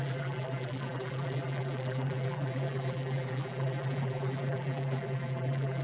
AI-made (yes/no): yes